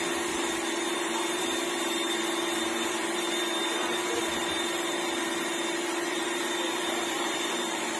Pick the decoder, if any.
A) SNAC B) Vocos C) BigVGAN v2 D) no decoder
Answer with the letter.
C